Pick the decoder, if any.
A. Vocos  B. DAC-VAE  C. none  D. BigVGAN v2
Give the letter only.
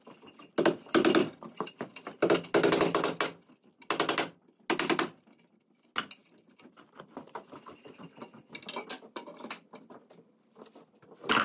C